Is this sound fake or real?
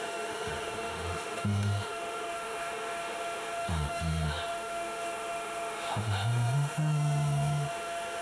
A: fake